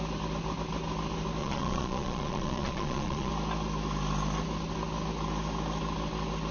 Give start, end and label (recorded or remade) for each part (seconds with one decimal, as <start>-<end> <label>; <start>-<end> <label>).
0.0-1.4 recorded; 1.4-3.3 remade; 3.3-6.5 recorded